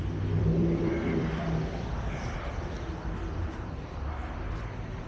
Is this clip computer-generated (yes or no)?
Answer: yes